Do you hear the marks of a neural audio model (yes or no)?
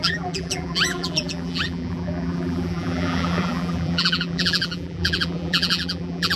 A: yes